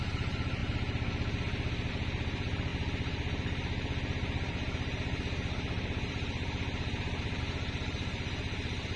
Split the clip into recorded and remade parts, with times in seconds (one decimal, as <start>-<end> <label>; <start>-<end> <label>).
0.0-0.6 remade; 0.6-1.9 recorded; 1.9-9.0 remade